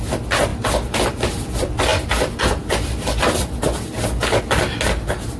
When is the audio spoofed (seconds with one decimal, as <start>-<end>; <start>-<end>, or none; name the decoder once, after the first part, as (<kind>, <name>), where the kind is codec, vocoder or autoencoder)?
1.9-4.4 (vocoder, BigVGAN v2)